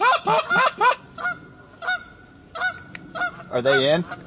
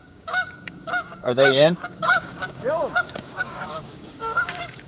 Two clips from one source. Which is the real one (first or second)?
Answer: first